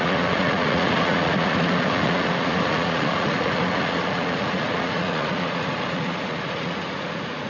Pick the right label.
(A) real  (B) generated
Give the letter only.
B